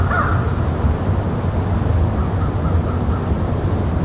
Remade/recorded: recorded